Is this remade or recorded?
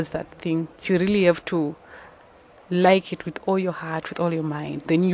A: recorded